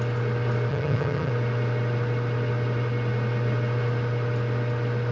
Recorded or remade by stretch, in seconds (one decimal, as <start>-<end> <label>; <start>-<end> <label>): 0.0-0.7 recorded; 0.7-1.3 remade; 1.3-5.1 recorded